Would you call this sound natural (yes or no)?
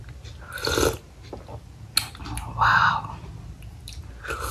yes